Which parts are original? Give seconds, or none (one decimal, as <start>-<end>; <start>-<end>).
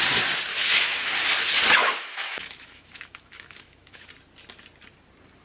0.0-0.5; 1.1-1.8; 4.1-5.4